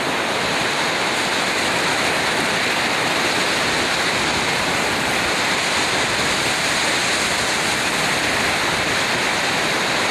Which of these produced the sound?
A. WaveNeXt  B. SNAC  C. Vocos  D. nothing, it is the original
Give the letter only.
D